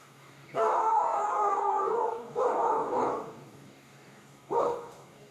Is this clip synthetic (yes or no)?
yes